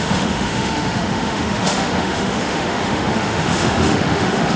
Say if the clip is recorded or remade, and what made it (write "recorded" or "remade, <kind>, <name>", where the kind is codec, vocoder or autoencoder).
remade, autoencoder, DAC-VAE